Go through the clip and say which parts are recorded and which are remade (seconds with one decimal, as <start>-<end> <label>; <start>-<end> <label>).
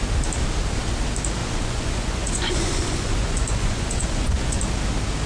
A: 0.0-1.4 recorded; 1.4-4.6 remade; 4.6-5.3 recorded